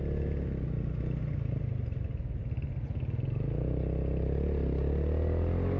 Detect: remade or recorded recorded